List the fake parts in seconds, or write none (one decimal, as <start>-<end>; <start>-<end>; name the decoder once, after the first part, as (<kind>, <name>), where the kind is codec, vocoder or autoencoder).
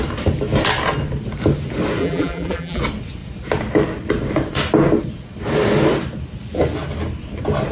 2.0-2.8 (vocoder, BigVGAN v2)